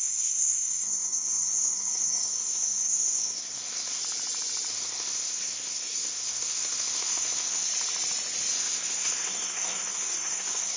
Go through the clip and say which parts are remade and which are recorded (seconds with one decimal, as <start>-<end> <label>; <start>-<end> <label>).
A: 0.0-4.0 remade; 4.0-4.7 recorded; 4.7-7.7 remade; 7.7-8.5 recorded; 8.5-10.8 remade